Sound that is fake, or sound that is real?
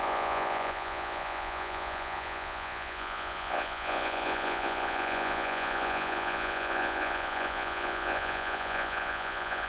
fake